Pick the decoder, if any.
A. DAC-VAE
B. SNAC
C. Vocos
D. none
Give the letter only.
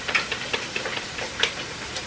D